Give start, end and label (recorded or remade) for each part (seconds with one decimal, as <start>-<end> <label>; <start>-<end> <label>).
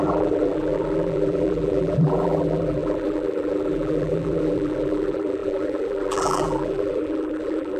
0.0-7.8 remade